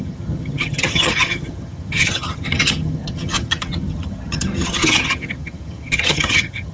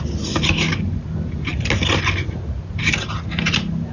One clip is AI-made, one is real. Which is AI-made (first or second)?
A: first